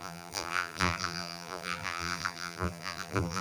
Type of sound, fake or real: fake